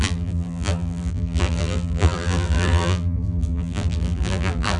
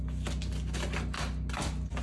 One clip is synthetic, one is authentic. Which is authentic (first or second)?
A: second